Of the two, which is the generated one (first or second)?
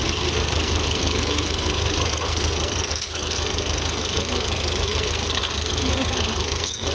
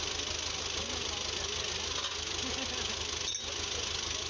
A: first